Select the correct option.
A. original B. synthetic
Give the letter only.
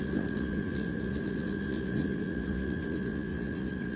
B